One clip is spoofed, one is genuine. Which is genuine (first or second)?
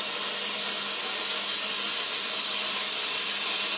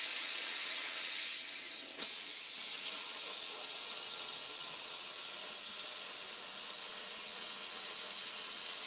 first